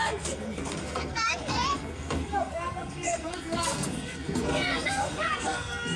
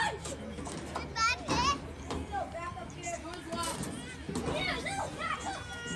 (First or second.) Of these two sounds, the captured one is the second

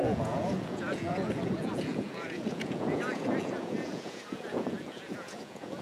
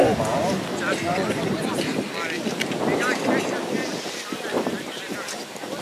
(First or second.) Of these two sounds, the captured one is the second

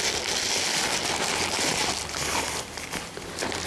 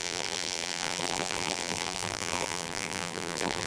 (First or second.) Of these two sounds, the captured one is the first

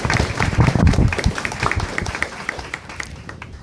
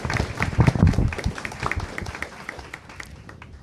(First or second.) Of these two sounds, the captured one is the second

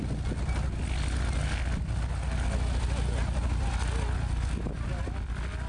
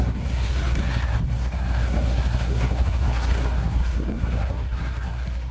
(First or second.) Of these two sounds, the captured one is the first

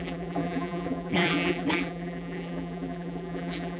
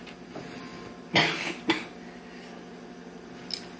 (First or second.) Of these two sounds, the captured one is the second